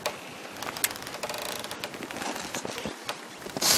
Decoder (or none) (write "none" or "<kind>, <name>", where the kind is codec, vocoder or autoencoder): none